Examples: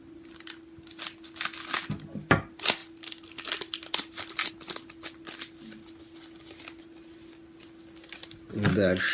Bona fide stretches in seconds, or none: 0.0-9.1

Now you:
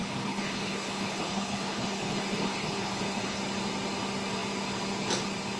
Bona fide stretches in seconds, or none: 3.4-5.6